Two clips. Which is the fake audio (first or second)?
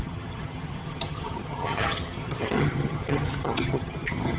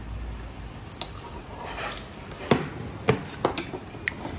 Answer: first